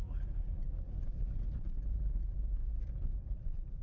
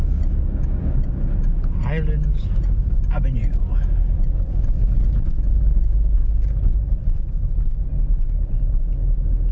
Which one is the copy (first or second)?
first